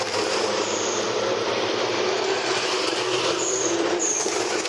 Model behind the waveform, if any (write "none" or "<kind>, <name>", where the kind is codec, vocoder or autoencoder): vocoder, BigVGAN v2